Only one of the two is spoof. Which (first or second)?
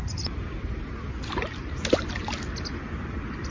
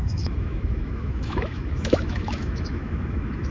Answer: second